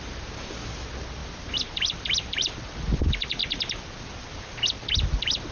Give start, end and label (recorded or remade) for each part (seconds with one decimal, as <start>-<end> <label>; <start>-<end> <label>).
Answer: 0.0-5.5 recorded